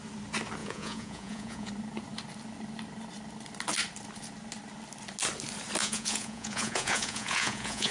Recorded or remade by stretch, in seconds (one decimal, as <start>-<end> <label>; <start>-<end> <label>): 0.0-0.6 recorded; 0.6-1.7 remade; 1.7-5.8 recorded; 5.8-7.9 remade

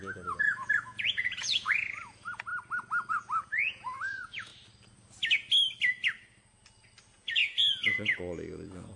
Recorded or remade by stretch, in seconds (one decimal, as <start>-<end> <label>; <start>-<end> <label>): 0.0-2.5 remade; 2.5-3.1 recorded; 3.1-4.5 remade; 4.5-7.0 recorded; 7.0-9.0 remade